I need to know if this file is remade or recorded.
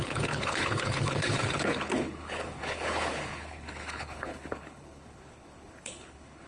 remade